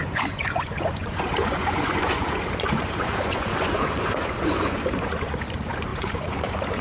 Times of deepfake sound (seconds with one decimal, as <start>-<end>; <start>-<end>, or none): 0.0-6.8

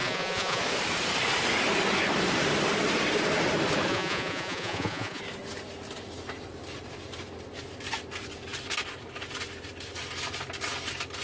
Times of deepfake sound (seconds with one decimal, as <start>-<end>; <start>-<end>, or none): 0.0-0.6; 3.9-5.2

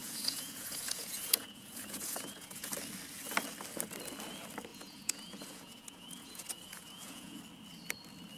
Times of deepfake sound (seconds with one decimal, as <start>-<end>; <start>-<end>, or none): 0.0-2.7; 4.7-7.4

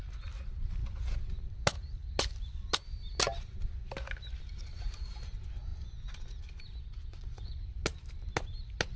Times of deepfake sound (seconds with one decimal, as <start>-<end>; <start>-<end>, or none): 7.1-7.6

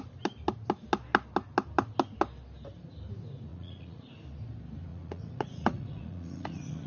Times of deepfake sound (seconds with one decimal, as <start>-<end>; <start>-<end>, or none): 3.5-4.1; 4.9-6.9

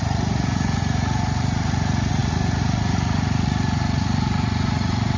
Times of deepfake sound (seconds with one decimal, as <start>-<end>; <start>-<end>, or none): 0.0-5.2

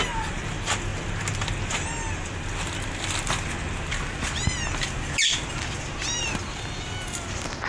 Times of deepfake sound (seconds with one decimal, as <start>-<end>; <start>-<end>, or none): none